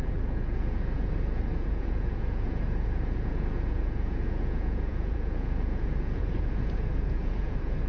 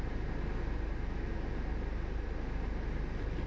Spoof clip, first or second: first